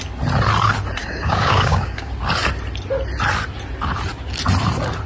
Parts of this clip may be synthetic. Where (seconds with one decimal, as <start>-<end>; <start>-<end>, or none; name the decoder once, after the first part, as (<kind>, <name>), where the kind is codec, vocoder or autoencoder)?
1.0-2.1 (codec, DAC)